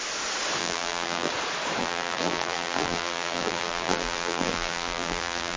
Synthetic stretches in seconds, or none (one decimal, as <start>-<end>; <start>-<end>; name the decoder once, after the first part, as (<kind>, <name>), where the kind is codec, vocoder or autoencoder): 0.6-1.3 (vocoder, BigVGAN v2); 1.8-5.6